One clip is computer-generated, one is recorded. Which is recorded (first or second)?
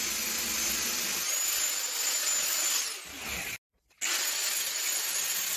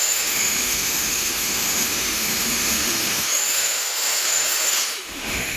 first